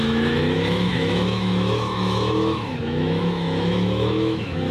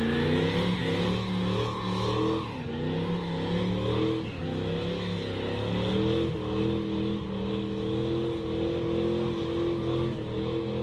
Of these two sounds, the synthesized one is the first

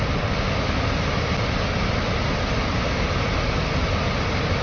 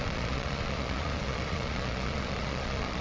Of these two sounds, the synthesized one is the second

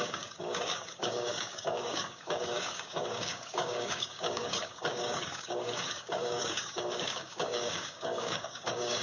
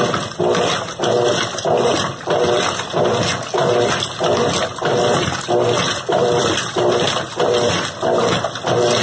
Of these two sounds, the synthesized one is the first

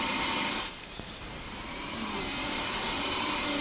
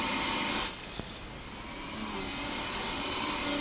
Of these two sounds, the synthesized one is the first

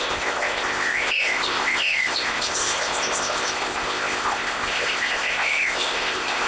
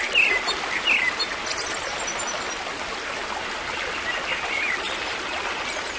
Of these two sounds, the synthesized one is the first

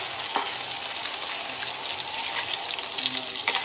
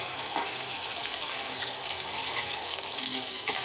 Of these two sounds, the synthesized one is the second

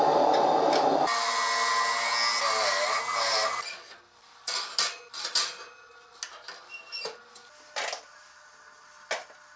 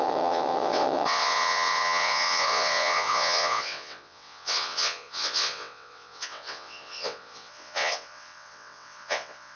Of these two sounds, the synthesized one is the second